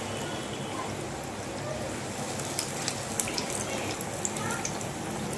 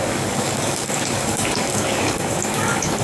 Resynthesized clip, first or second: second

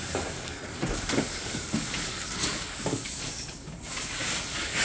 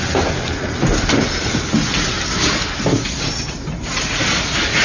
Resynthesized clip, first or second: first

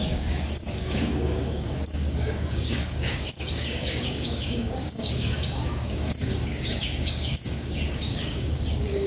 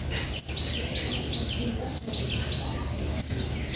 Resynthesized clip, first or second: first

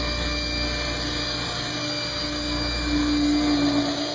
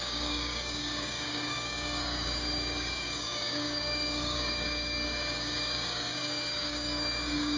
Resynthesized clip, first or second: second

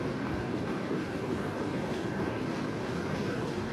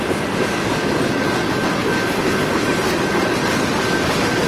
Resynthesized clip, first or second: first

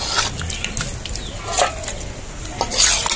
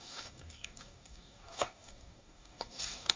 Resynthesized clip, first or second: second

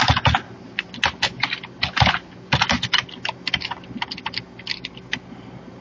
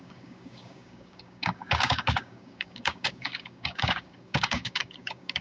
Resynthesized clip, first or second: second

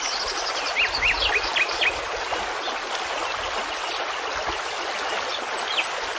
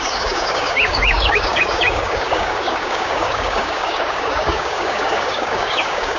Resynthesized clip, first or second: second